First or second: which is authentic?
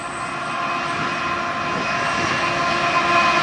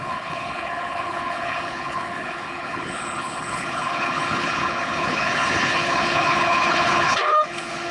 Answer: first